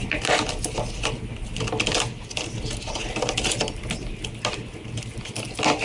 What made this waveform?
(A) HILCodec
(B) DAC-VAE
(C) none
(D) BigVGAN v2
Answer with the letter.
C